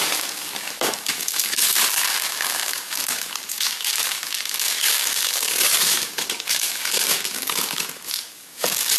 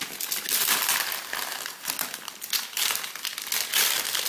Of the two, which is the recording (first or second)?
second